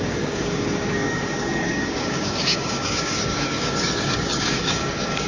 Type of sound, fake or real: fake